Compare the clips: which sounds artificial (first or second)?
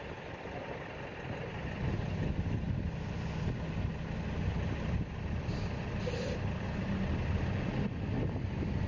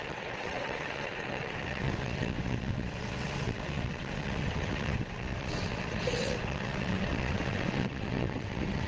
second